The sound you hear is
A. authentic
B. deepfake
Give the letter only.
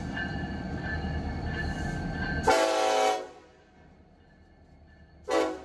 A